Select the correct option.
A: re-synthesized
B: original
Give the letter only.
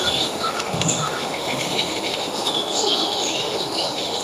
A